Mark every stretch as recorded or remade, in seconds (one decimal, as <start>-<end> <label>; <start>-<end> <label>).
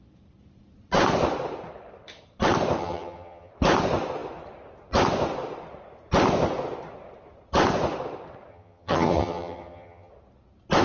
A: 0.0-2.8 recorded; 2.8-3.5 remade; 3.5-8.5 recorded; 8.5-10.1 remade; 10.1-10.8 recorded